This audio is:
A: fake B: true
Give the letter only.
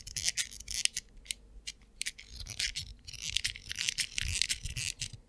B